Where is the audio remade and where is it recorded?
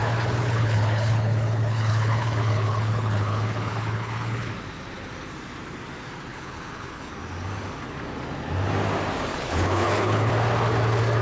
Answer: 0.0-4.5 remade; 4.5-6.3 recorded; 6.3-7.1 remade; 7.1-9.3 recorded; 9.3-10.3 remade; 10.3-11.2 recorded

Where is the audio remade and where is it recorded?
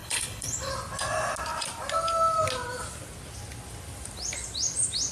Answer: 0.0-0.7 remade; 0.7-5.1 recorded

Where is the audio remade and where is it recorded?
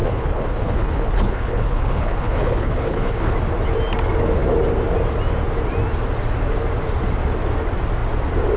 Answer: 0.0-3.3 remade; 3.3-8.6 recorded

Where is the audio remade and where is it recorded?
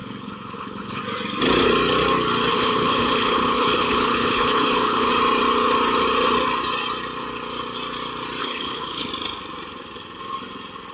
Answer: 0.0-1.0 remade; 1.0-2.5 recorded; 2.5-5.1 remade; 5.1-8.4 recorded; 8.4-9.1 remade; 9.1-10.9 recorded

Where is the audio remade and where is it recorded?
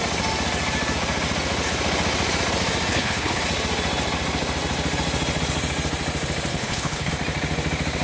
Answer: 0.0-2.9 recorded; 2.9-3.4 remade; 3.4-6.5 recorded; 6.5-7.1 remade; 7.1-8.0 recorded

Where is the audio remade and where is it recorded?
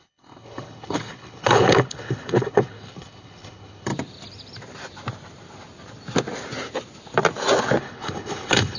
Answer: 0.0-3.9 remade; 3.9-7.8 recorded; 7.8-8.8 remade